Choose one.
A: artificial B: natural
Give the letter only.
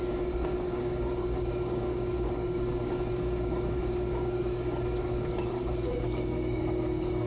A